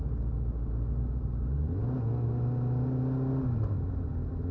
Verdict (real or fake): real